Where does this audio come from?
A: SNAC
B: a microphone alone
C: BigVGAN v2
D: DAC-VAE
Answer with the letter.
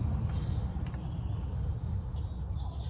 B